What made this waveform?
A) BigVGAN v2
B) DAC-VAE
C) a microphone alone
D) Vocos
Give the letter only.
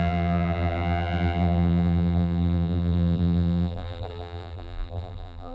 A